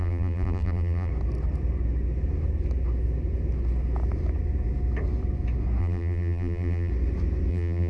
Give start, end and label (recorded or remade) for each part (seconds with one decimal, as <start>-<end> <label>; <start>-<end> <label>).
0.0-1.1 remade; 1.1-5.8 recorded; 5.8-6.9 remade; 6.9-7.5 recorded; 7.5-7.9 remade